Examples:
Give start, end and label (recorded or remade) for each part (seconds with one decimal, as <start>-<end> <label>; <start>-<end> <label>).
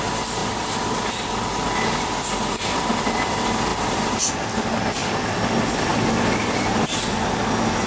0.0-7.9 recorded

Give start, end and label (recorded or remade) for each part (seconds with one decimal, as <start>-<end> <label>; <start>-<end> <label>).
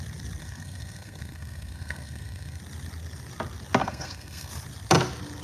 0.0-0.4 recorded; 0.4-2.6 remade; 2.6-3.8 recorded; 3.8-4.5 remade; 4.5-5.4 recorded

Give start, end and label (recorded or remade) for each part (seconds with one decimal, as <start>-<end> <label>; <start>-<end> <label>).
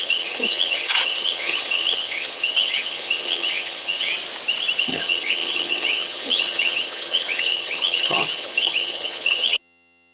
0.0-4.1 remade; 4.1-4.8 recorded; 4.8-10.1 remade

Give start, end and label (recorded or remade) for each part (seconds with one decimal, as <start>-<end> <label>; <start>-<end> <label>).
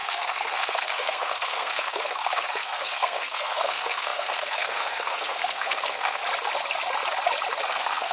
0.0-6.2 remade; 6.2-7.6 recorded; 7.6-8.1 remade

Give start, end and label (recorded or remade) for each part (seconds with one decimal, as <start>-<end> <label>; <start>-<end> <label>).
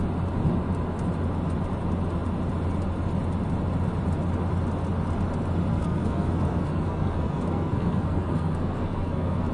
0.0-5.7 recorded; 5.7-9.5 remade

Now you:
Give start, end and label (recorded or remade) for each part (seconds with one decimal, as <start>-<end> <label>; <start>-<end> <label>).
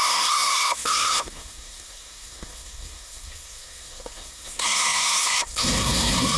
0.0-6.4 remade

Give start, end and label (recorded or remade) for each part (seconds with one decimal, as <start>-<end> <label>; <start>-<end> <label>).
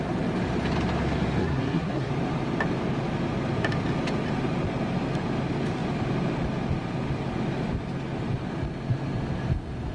0.0-1.4 recorded; 1.4-2.1 remade; 2.1-9.9 recorded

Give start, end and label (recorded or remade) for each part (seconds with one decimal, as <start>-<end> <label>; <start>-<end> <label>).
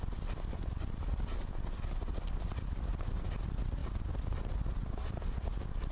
0.0-5.9 recorded